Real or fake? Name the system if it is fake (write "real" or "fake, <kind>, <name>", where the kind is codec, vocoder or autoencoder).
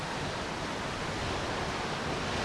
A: real